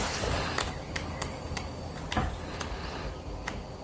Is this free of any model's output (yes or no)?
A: yes